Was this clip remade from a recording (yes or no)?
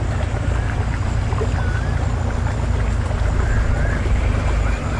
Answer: no